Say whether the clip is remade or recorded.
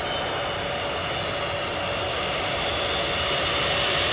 recorded